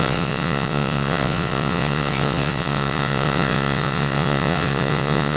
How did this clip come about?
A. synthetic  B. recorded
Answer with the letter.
A